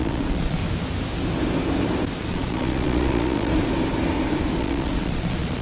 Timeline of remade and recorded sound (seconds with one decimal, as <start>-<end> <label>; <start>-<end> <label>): 0.0-0.6 remade; 0.6-2.2 recorded; 2.2-3.5 remade; 3.5-4.6 recorded; 4.6-5.6 remade